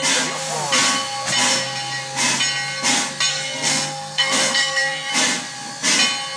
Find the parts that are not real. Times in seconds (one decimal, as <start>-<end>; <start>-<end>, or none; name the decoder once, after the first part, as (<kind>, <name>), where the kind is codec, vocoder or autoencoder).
3.3-5.1 (codec, SNAC)